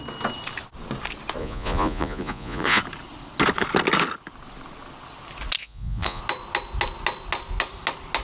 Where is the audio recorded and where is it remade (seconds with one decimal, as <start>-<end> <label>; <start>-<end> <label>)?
0.0-1.4 recorded; 1.4-2.8 remade; 2.8-5.6 recorded; 5.6-6.2 remade; 6.2-8.2 recorded